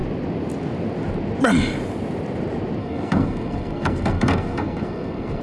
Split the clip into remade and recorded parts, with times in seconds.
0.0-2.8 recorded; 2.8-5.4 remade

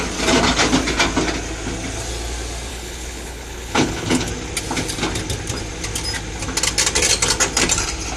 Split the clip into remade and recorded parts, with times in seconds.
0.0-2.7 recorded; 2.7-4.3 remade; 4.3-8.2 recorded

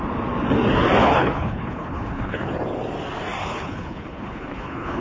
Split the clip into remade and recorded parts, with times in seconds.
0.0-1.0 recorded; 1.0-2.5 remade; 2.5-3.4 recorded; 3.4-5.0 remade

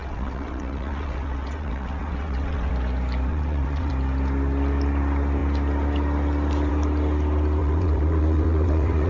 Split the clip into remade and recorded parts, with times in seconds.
0.0-2.7 remade; 2.7-3.3 recorded; 3.3-3.9 remade; 3.9-7.6 recorded; 7.6-9.1 remade